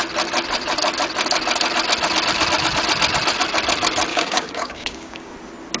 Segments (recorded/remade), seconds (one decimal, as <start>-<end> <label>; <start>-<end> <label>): 0.0-4.1 recorded; 4.1-5.3 remade; 5.3-5.8 recorded